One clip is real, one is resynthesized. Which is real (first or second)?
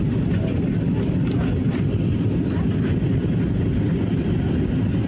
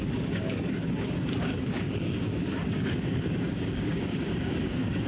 first